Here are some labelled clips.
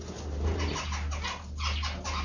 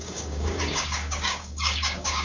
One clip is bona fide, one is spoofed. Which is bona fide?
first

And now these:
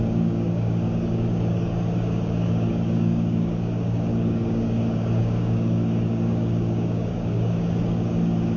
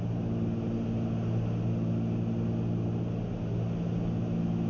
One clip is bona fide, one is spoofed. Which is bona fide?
second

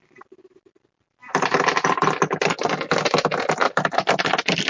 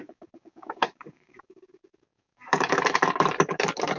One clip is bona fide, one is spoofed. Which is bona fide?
first